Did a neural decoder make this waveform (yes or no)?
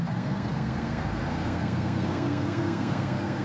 yes